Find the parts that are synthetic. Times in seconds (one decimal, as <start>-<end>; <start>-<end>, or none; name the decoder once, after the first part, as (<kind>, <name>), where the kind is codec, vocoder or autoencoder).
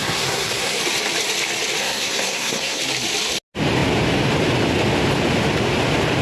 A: 0.0-0.8 (codec, SNAC); 1.8-2.8